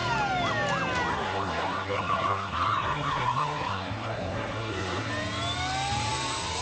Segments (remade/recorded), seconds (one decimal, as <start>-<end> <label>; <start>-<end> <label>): 0.0-1.1 recorded; 1.1-5.1 remade; 5.1-6.6 recorded